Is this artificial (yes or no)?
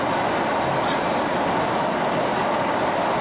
no